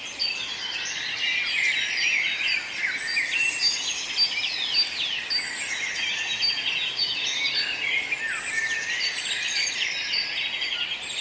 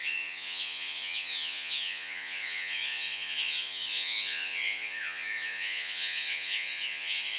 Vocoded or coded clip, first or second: second